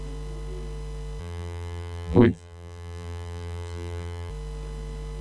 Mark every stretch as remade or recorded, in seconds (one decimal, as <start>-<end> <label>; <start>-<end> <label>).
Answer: 0.0-1.2 recorded; 1.2-4.3 remade; 4.3-5.2 recorded